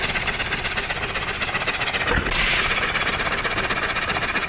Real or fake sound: real